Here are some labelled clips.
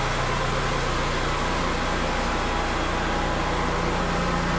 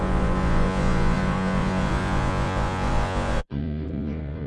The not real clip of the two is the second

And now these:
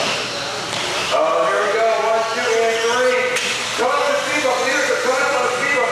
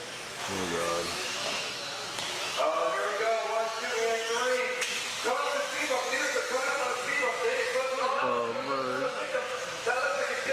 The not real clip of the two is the second